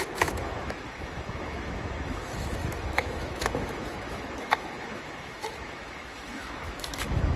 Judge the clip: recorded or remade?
remade